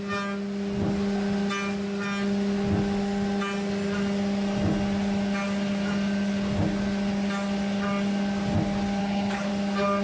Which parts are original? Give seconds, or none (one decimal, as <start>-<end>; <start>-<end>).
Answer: 0.0-9.0; 9.5-10.0